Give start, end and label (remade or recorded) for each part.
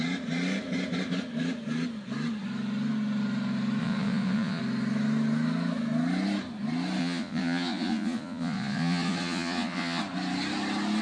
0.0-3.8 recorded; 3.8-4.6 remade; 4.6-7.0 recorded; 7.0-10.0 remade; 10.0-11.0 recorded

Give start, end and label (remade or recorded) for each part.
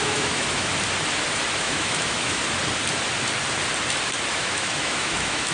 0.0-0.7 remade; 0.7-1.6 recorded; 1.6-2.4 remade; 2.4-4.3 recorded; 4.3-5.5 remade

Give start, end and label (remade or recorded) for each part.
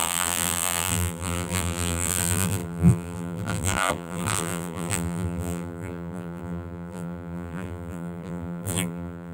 0.0-9.3 remade